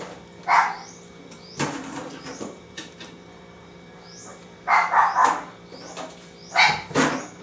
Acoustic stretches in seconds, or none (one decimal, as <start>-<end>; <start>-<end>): 0.0-0.8; 4.6-7.4